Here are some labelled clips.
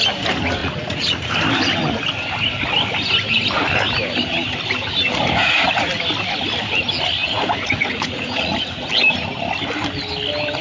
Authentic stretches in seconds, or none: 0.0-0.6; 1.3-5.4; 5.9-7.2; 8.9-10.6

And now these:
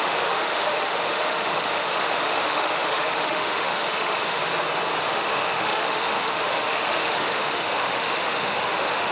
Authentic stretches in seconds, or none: 4.4-5.1

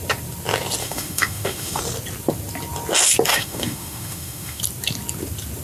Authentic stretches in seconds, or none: 0.0-0.8; 1.8-3.3; 4.6-5.6

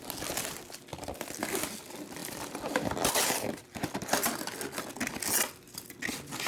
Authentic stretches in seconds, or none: 0.0-2.2; 4.5-6.5

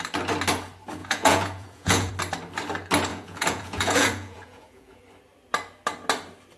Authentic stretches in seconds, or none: 0.0-1.0; 2.1-3.1; 5.0-6.6

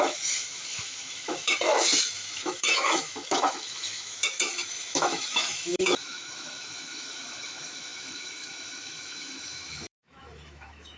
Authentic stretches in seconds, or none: none

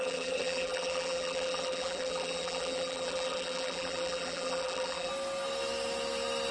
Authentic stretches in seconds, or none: 5.1-6.5